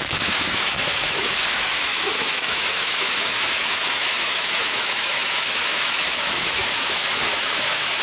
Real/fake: fake